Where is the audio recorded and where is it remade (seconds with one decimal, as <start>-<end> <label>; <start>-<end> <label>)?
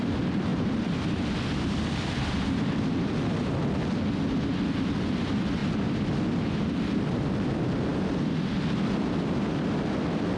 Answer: 0.0-10.4 remade